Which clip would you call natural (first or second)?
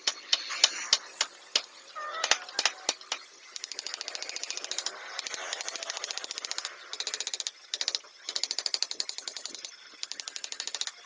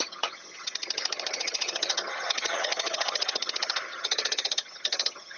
first